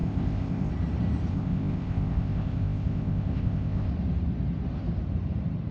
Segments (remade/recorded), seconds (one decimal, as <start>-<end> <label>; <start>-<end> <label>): 0.0-0.7 remade; 0.7-1.3 recorded; 1.3-3.9 remade; 3.9-5.7 recorded